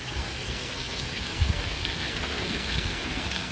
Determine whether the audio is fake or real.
fake